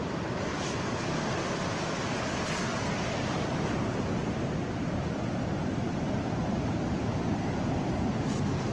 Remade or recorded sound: recorded